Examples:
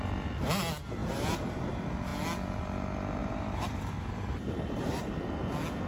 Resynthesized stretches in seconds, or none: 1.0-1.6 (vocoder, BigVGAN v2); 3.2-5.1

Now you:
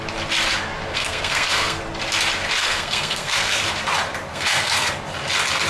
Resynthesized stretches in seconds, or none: 0.9-1.8 (codec, SNAC); 2.6-3.6; 4.3-4.9

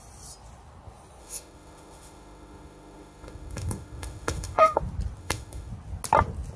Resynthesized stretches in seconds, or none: 1.2-4.8 (autoencoder, DAC-VAE); 5.2-5.7

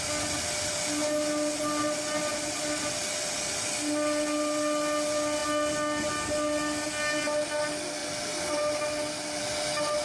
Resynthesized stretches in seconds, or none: none

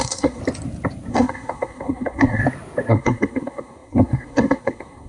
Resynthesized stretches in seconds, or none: 0.0-0.4 (codec, SNAC); 1.1-2.4; 2.9-5.1

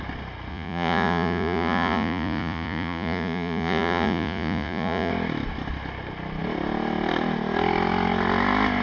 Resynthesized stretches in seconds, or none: 0.5-5.1 (vocoder, Vocos)

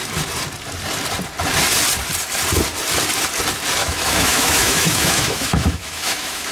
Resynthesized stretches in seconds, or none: 3.8-6.5 (autoencoder, DAC-VAE)